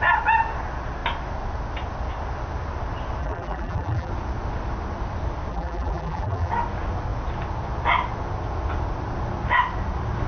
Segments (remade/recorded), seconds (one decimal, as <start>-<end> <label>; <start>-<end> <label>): 0.0-3.2 recorded; 3.2-4.1 remade; 4.1-5.5 recorded; 5.5-6.5 remade; 6.5-10.3 recorded